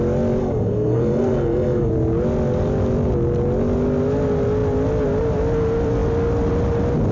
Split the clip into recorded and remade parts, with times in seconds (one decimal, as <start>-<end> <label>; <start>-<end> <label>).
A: 0.0-0.4 recorded; 0.4-1.9 remade; 1.9-7.1 recorded